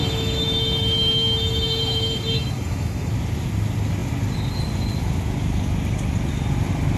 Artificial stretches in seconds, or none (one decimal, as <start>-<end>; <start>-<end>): 0.0-3.1